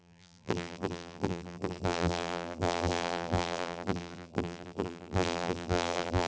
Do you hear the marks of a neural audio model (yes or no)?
yes